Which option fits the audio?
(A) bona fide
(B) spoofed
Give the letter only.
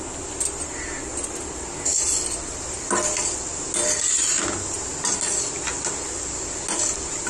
A